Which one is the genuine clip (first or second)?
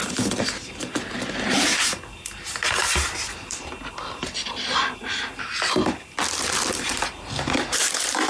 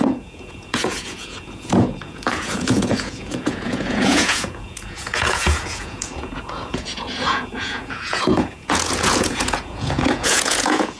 first